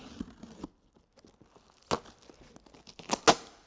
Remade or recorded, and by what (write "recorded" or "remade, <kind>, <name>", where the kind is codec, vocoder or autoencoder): recorded